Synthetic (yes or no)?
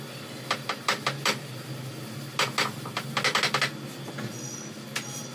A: no